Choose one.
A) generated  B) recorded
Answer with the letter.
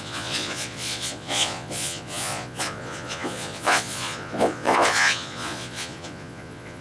A